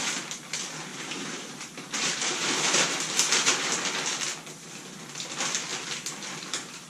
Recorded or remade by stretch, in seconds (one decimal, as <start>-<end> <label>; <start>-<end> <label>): 0.0-0.9 recorded; 0.9-2.9 remade; 2.9-6.9 recorded

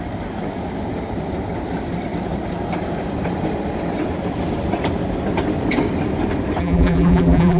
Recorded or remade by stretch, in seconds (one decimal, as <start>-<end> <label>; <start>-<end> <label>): 0.0-6.6 recorded; 6.6-7.6 remade

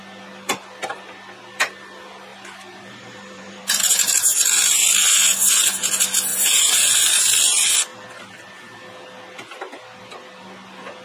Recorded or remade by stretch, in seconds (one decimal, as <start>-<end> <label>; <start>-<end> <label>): 0.0-2.3 recorded; 2.3-3.6 remade; 3.6-6.3 recorded; 6.3-7.2 remade; 7.2-11.0 recorded

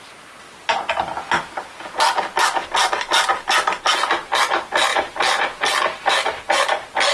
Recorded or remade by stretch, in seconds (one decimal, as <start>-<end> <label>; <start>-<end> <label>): 0.0-4.9 recorded; 4.9-6.5 remade; 6.5-7.1 recorded

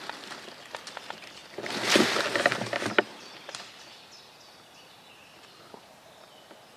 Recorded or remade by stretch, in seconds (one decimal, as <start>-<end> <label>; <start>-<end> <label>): 0.0-6.8 recorded

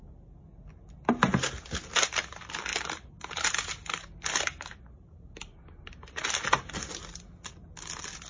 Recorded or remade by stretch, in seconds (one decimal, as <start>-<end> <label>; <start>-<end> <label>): 0.0-8.3 recorded

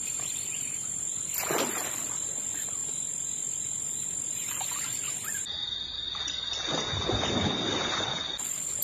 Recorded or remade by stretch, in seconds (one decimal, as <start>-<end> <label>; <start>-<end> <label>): 0.0-8.8 recorded

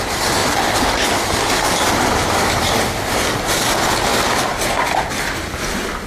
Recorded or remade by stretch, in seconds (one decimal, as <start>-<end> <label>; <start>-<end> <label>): 0.0-0.4 recorded; 0.4-3.0 remade; 3.0-4.1 recorded; 4.1-5.2 remade; 5.2-6.1 recorded